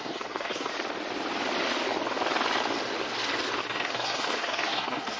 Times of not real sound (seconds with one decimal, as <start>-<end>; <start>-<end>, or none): 0.0-0.7; 3.6-5.2